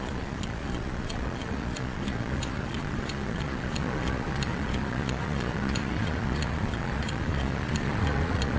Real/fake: fake